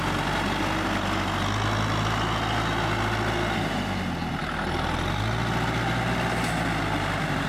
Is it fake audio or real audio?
real